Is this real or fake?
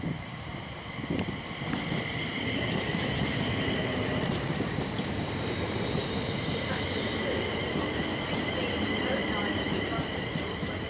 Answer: fake